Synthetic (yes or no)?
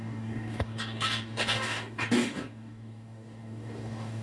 yes